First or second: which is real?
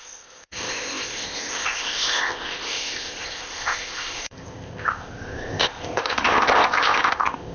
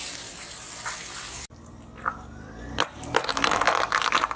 second